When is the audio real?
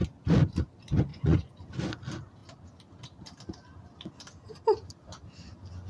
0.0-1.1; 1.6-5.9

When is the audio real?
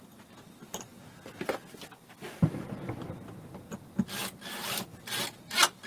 0.0-5.9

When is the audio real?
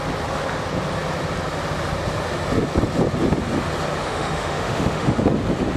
0.0-4.0; 5.2-5.8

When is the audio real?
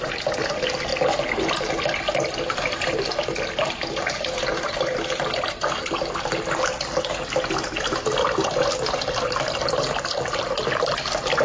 0.0-11.4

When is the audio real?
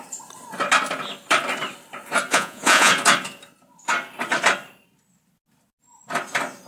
0.0-2.3; 2.9-6.7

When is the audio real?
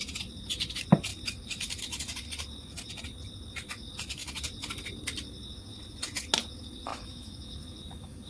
0.0-6.9